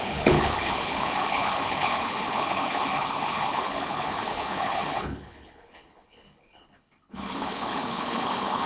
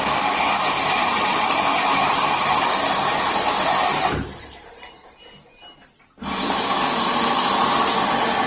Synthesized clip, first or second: first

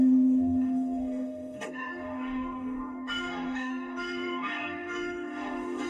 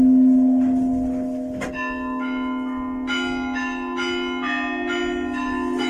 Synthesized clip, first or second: first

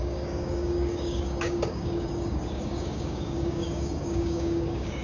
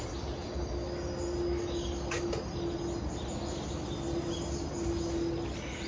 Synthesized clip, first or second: first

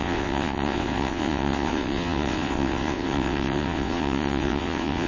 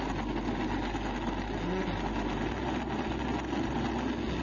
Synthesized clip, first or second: first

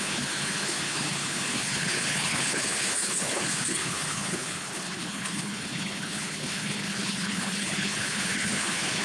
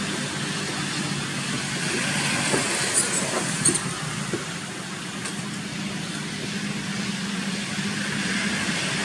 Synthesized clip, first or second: first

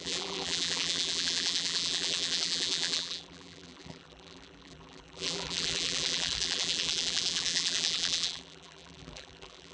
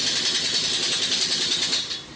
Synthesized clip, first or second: first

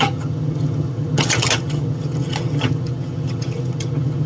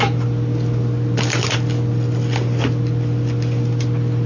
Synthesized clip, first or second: first